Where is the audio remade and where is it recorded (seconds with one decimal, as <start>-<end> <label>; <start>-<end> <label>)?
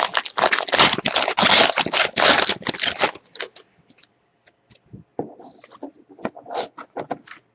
0.0-7.5 recorded